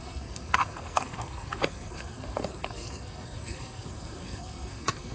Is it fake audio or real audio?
fake